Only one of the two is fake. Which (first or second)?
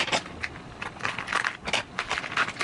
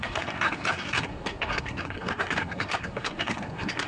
second